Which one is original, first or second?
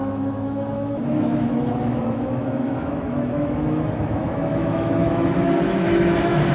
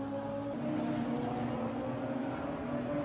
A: second